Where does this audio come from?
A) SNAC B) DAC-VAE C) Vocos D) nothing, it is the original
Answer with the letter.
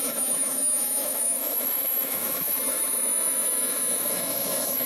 B